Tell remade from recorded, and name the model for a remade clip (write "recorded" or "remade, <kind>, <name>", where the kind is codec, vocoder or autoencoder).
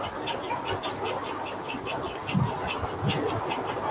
recorded